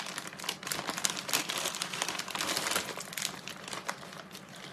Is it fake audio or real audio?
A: real